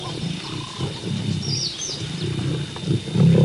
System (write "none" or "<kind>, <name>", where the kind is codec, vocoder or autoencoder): none